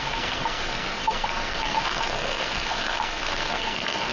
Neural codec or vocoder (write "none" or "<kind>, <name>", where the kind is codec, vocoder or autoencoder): codec, SNAC